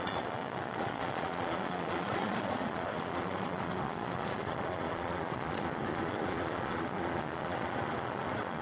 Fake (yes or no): yes